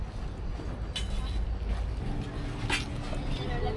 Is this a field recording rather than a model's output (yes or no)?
yes